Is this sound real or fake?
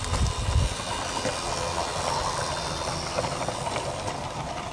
real